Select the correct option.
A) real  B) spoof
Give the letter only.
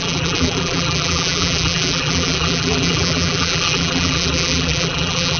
B